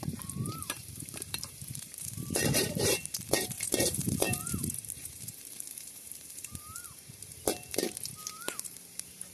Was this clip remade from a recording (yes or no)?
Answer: yes